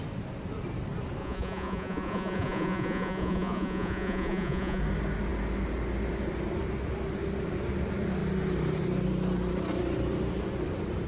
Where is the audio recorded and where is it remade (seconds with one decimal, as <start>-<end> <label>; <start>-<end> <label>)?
0.0-1.2 recorded; 1.2-4.8 remade; 4.8-11.1 recorded